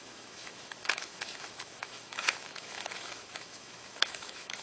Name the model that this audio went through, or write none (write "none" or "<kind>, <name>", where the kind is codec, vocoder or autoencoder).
autoencoder, DAC-VAE